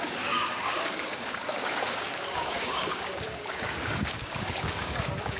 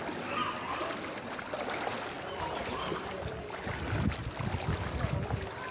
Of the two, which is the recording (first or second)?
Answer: second